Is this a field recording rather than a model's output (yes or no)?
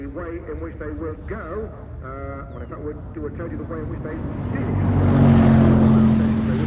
yes